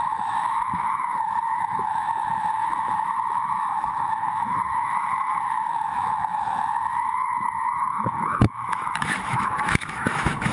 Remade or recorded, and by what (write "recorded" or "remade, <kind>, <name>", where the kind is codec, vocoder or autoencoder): remade, autoencoder, DAC-VAE